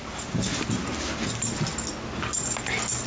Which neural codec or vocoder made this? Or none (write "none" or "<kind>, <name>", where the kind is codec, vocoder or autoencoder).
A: none